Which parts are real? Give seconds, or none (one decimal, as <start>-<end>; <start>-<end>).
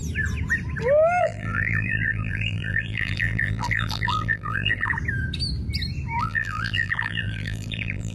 0.0-1.2; 4.9-6.2